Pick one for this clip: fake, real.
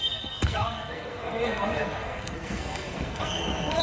fake